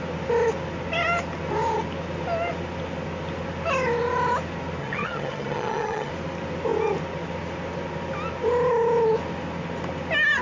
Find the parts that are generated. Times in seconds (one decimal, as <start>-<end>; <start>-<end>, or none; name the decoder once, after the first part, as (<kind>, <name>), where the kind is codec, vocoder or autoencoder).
4.8-6.1 (vocoder, HiFi-GAN)